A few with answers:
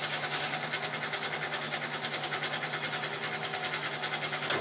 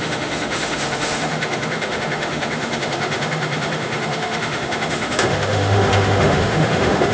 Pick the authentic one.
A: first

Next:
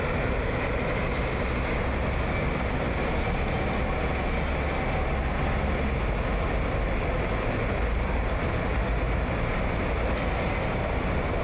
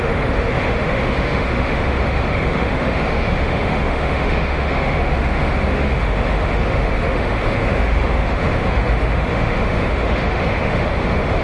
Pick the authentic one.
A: first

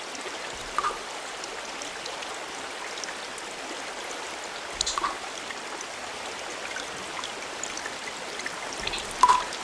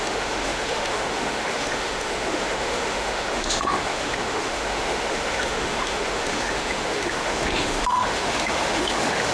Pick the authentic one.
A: first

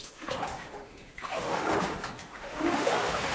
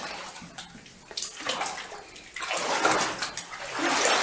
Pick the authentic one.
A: second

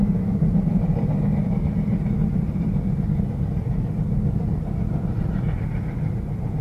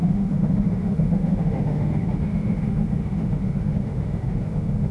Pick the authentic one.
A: first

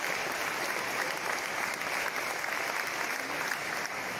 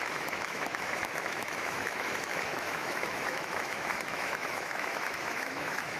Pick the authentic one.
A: first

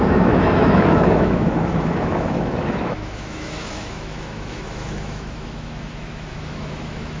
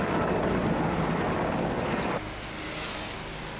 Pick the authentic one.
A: second